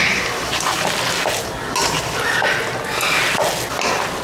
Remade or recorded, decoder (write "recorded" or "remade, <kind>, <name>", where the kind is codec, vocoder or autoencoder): recorded